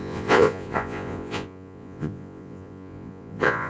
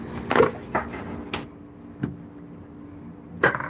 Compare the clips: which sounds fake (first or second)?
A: first